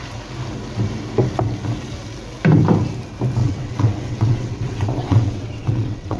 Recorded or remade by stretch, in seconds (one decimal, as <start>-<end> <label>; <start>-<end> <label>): 0.0-3.4 recorded; 3.4-6.2 remade